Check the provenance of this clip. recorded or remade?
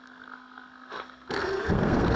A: remade